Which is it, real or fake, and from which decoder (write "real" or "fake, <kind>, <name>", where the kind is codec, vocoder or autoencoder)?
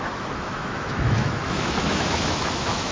fake, autoencoder, DAC-VAE